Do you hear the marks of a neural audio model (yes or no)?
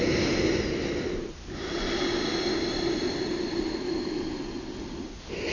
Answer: no